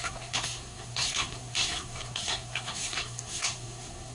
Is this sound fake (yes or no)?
yes